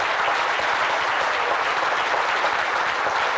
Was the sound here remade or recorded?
recorded